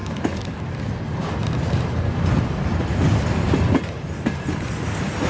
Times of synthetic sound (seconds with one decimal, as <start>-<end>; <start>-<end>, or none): 0.0-0.6